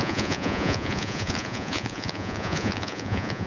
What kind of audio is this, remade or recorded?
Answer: remade